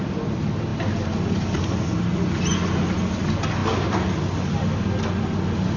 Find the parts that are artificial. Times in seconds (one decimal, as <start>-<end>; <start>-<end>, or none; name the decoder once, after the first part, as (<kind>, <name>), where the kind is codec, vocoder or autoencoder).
none